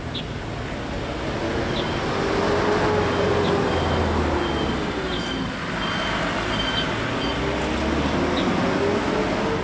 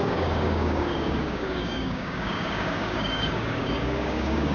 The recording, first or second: first